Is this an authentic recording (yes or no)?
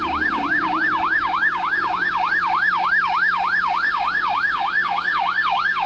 no